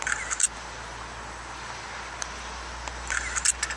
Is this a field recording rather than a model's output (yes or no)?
yes